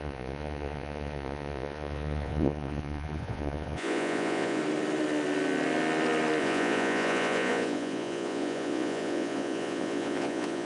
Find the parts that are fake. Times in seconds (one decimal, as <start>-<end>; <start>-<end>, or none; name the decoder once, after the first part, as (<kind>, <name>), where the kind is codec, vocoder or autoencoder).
0.0-4.6 (vocoder, Vocos); 6.4-10.6